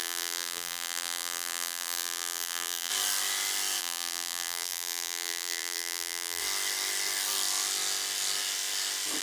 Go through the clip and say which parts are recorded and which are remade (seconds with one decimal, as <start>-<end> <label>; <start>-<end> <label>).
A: 0.0-2.9 remade; 2.9-3.8 recorded; 3.8-6.4 remade; 6.4-9.2 recorded